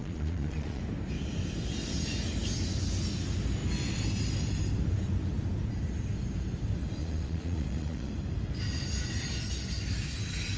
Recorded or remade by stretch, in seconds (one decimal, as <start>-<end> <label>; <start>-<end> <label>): 0.0-0.8 remade; 0.8-7.0 recorded; 7.0-8.1 remade; 8.1-10.6 recorded